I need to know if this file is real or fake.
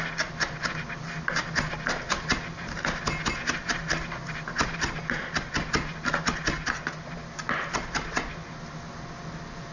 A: real